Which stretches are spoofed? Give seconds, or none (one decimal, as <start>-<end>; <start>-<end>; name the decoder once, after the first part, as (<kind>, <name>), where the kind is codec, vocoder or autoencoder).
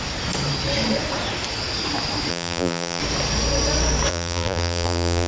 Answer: 2.3-3.0 (vocoder, BigVGAN v2); 4.1-5.3